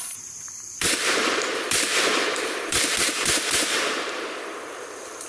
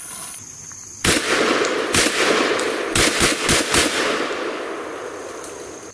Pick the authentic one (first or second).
second